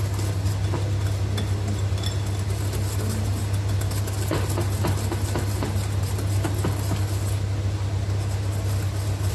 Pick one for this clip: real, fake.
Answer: real